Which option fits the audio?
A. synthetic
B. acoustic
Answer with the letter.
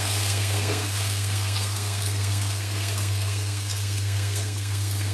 A